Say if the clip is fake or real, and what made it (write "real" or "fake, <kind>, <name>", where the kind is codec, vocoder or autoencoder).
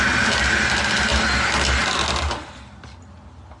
real